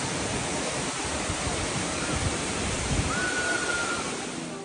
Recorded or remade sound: recorded